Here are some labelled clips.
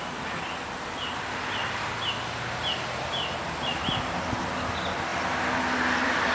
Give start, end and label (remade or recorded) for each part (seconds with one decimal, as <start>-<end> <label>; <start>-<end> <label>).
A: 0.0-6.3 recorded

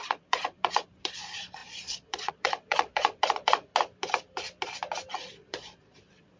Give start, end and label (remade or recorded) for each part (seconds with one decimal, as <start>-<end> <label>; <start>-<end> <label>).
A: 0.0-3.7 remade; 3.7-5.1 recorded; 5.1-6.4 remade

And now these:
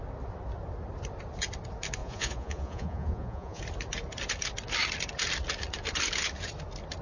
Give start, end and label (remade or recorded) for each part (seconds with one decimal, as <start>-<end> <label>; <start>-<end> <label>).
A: 0.0-2.0 recorded; 2.0-3.6 remade; 3.6-7.0 recorded

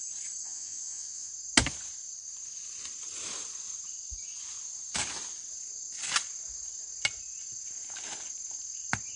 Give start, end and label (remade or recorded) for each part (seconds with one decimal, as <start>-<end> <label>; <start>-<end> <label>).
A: 0.0-0.4 recorded; 0.4-1.3 remade; 1.3-9.2 recorded

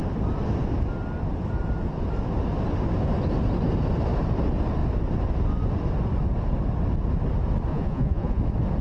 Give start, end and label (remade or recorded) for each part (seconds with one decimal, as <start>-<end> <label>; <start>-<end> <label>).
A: 0.0-7.7 recorded; 7.7-8.4 remade; 8.4-8.8 recorded